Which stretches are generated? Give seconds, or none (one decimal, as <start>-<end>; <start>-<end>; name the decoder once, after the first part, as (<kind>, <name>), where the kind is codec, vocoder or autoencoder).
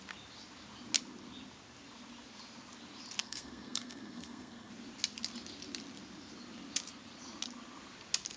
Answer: 3.2-4.7 (codec, SNAC)